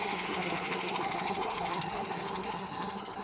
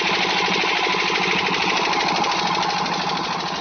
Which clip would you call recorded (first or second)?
second